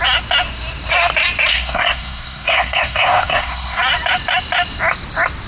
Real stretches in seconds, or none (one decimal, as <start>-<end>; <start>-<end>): 0.0-1.5; 3.8-5.5